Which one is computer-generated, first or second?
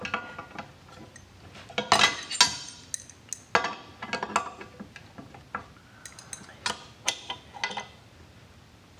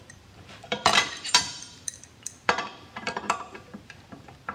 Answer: second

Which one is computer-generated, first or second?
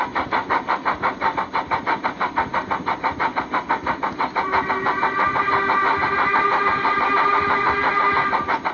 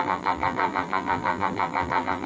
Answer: second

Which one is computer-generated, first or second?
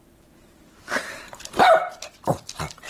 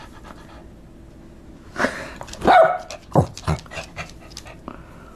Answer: first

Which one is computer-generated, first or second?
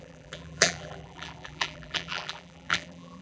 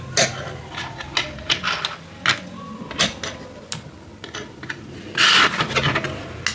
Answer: first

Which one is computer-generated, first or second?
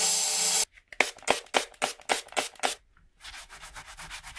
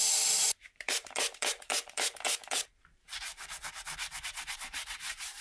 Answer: second